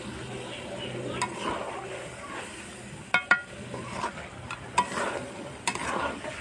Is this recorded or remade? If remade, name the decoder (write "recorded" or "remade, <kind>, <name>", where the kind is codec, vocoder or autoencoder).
recorded